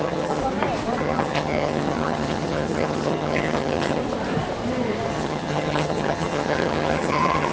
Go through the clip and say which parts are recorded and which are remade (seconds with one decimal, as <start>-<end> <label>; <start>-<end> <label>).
0.0-0.4 remade; 0.4-1.0 recorded; 1.0-4.0 remade; 4.0-5.1 recorded; 5.1-7.5 remade